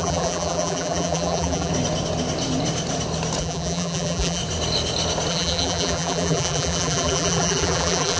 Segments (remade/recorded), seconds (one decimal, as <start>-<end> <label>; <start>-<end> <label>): 0.0-1.7 remade; 1.7-3.4 recorded; 3.4-4.4 remade; 4.4-5.3 recorded; 5.3-8.2 remade